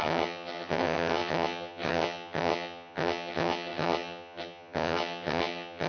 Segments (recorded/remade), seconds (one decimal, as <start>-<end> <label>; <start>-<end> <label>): 0.0-5.9 remade